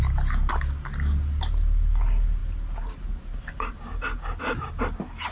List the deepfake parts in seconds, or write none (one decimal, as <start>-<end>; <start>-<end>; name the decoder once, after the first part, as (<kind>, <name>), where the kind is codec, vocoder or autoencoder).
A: none